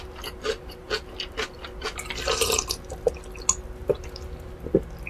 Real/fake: real